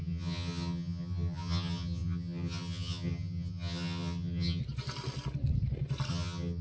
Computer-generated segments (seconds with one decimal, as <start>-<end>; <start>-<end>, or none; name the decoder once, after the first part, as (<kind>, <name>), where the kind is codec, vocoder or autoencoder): 0.0-4.6 (vocoder, HiFi-GAN); 6.1-6.6